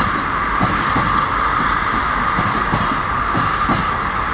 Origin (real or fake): real